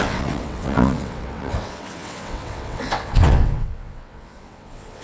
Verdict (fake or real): fake